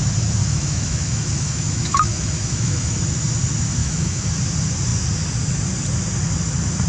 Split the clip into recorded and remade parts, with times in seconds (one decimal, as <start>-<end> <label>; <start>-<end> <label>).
0.0-0.4 recorded; 0.4-3.0 remade; 3.0-3.8 recorded; 3.8-4.3 remade; 4.3-6.9 recorded